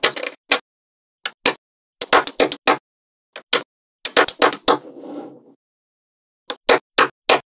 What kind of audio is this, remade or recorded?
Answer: recorded